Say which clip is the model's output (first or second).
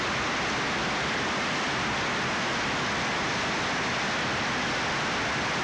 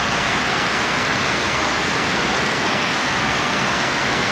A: second